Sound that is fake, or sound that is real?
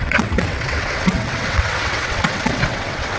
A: fake